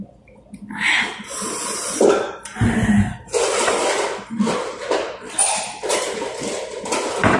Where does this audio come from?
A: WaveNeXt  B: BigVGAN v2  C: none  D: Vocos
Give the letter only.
B